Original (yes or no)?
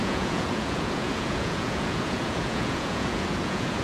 no